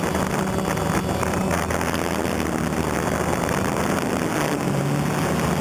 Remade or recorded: recorded